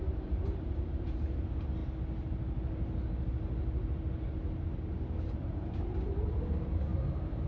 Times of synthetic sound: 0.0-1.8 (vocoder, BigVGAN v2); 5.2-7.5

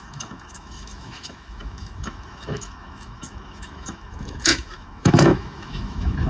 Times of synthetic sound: 0.0-6.3 (autoencoder, DAC-VAE)

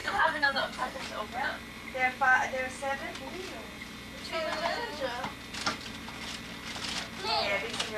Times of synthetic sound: 0.0-1.0 (codec, SNAC)